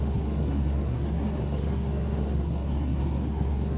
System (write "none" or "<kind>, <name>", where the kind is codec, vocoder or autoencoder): codec, SNAC